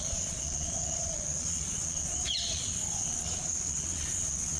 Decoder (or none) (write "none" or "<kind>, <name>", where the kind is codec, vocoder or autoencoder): vocoder, Vocos